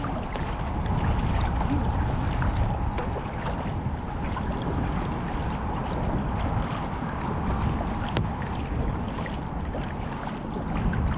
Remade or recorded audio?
recorded